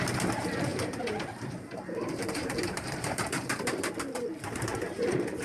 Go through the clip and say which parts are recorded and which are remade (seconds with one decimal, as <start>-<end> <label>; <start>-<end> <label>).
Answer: 0.0-5.4 remade